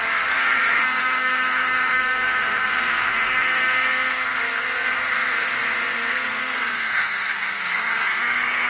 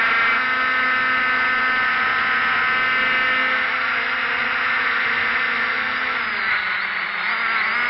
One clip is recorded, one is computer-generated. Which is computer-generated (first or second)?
first